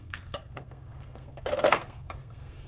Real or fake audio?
fake